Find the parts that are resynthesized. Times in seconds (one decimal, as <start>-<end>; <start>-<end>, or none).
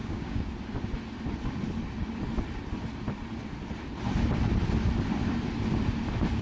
0.0-0.5